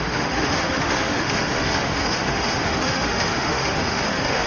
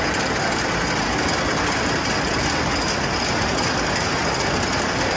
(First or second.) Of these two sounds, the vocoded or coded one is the first